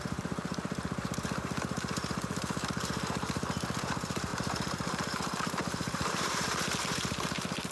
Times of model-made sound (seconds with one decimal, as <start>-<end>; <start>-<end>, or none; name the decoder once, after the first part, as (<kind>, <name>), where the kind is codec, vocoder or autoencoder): 0.0-7.7 (vocoder, BigVGAN v2)